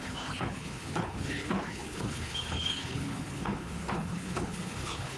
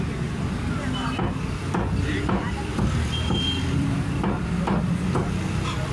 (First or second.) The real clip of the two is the second